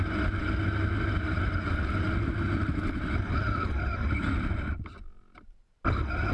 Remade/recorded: recorded